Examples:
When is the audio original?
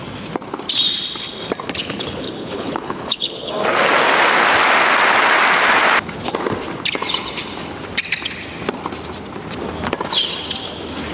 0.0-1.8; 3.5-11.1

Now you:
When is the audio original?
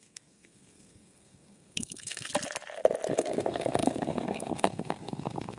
2.3-3.1